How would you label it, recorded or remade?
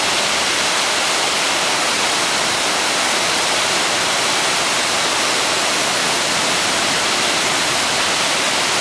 recorded